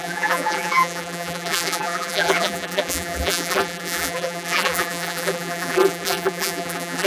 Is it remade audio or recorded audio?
remade